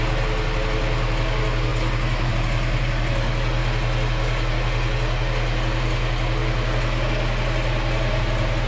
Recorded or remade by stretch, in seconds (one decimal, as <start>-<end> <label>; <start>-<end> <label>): 0.0-8.7 recorded